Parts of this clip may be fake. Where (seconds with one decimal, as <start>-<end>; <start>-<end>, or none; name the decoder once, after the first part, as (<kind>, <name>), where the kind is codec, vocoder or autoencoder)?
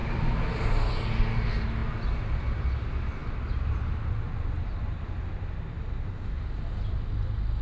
0.0-0.9 (vocoder, BigVGAN v2)